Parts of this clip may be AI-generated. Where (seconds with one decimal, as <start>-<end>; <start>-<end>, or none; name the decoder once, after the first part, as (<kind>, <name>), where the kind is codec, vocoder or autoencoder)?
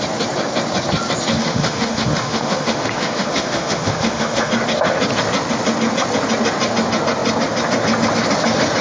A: 1.4-4.5 (autoencoder, DAC-VAE)